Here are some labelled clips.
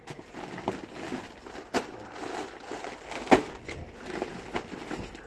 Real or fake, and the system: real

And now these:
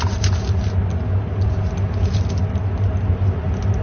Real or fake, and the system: real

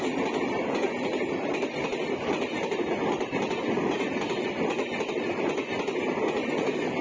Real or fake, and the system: real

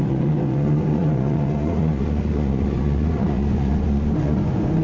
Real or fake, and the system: fake, vocoder, Vocos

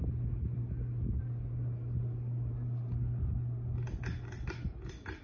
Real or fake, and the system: real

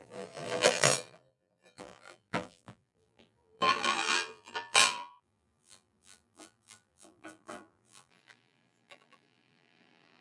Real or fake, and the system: fake, vocoder, BigVGAN v2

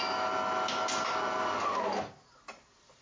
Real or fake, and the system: real